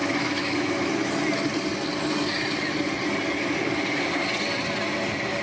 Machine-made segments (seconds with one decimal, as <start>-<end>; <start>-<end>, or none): 0.0-1.1